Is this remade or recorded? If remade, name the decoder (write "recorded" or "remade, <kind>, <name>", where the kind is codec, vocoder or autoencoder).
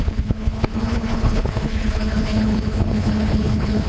remade, codec, HILCodec